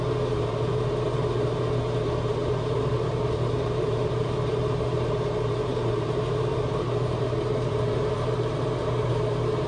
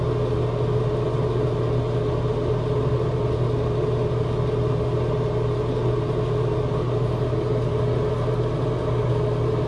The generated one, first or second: first